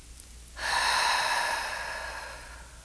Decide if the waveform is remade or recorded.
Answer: recorded